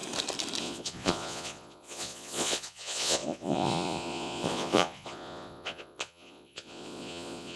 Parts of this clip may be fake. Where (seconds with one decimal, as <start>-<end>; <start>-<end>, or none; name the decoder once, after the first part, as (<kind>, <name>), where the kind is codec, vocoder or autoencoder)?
0.6-7.6 (vocoder, Vocos)